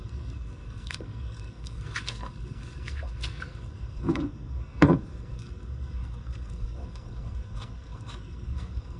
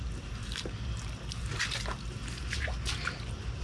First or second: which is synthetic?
first